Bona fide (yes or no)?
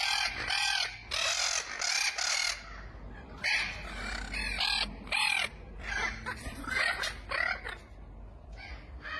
yes